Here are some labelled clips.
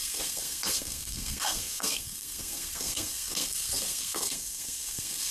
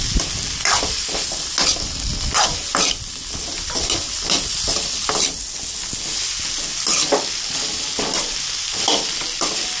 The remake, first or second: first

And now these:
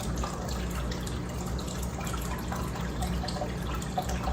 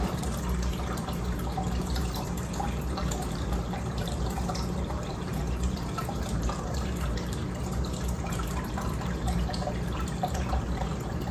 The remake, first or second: second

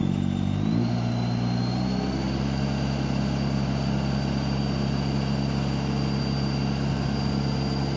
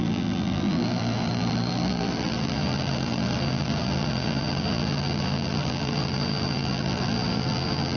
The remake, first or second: second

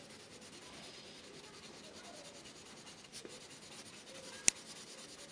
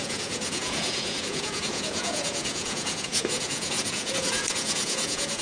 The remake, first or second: second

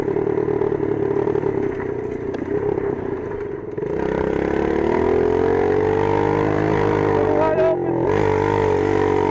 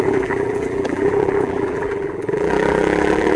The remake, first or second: second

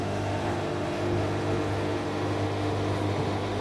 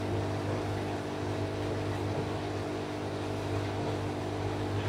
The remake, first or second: first